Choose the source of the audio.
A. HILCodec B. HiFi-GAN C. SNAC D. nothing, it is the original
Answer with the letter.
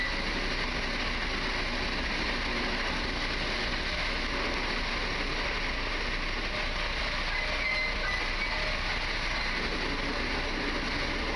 D